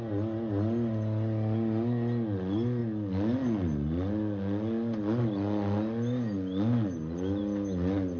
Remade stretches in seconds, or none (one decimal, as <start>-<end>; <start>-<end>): none